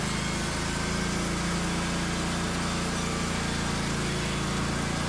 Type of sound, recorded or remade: recorded